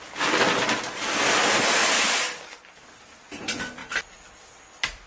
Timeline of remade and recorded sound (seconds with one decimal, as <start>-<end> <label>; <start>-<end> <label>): 0.0-1.8 recorded; 1.8-2.6 remade; 2.6-3.8 recorded; 3.8-5.1 remade